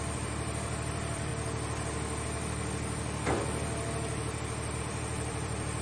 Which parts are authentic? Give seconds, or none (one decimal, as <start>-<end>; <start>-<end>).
1.3-4.8